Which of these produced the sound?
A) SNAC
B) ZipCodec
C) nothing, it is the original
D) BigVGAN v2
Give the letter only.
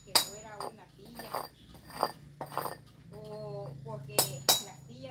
C